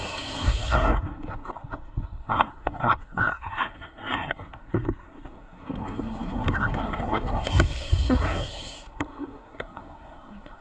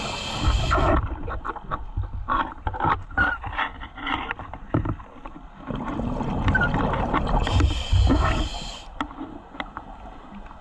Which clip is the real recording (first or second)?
second